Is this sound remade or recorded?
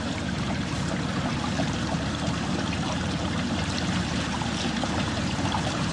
remade